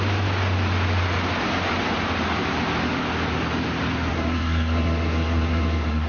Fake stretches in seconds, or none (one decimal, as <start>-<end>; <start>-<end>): 4.1-6.1